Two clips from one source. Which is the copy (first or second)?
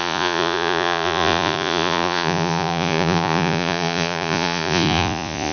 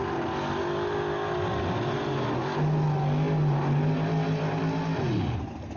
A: first